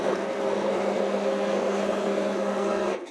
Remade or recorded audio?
remade